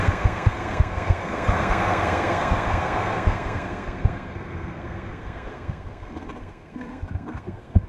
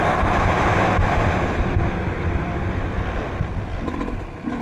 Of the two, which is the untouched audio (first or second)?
second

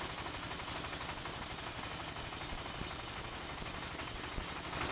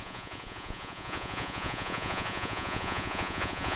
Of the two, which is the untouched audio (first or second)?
first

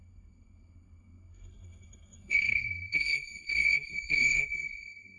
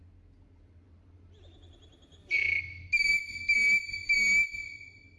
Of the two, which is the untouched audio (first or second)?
second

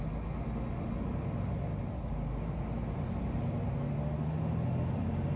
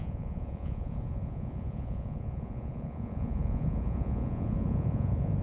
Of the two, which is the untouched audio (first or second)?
first